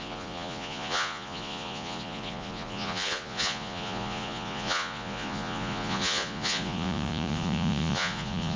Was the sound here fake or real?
fake